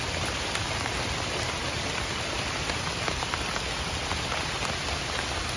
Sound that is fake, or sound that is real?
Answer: real